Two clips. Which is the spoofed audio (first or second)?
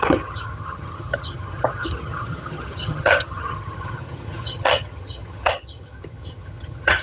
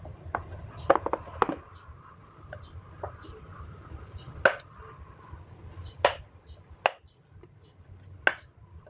first